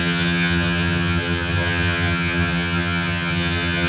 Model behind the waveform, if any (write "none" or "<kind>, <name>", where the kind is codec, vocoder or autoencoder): vocoder, HiFi-GAN